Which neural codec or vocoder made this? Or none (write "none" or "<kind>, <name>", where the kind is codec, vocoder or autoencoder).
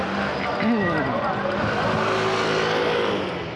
none